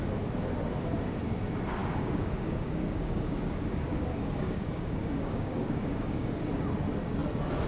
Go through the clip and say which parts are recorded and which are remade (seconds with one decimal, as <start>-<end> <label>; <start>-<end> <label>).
0.0-1.8 recorded; 1.8-6.4 remade; 6.4-7.7 recorded